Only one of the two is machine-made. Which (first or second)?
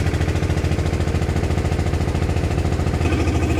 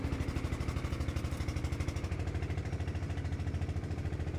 second